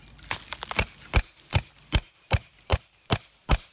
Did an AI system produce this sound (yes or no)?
no